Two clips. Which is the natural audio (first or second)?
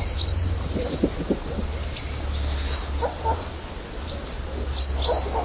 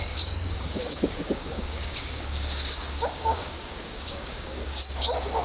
first